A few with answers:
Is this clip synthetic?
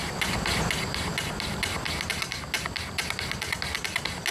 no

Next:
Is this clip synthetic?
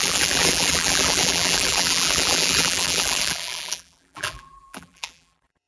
yes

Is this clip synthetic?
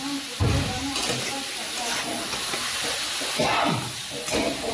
no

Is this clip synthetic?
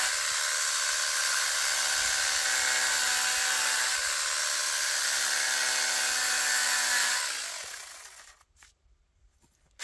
no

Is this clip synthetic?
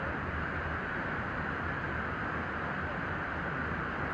no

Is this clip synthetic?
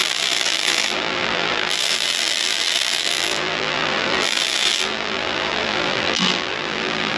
yes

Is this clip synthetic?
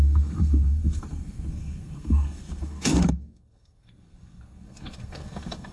yes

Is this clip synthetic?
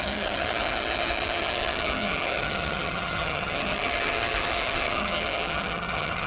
yes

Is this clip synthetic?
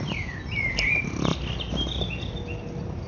no